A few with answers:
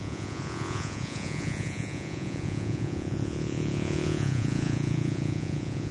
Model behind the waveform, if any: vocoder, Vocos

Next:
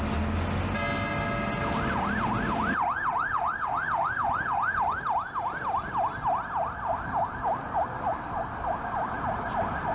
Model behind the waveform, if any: none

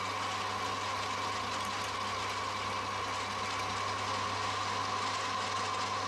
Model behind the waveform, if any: none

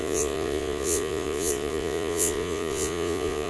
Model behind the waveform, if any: vocoder, Vocos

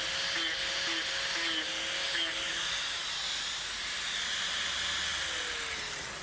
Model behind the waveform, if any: none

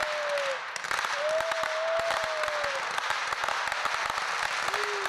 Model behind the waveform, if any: none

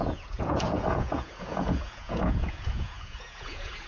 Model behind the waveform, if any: vocoder, Vocos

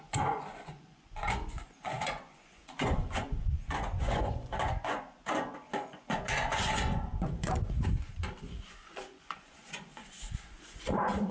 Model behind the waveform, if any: vocoder, Vocos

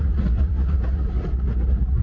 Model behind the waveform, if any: vocoder, Vocos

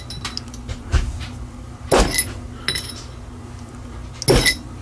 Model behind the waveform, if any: none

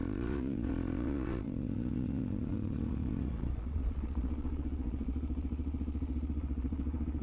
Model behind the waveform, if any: vocoder, Vocos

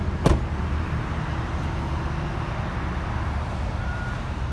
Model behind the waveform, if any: none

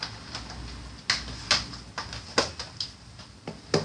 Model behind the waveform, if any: none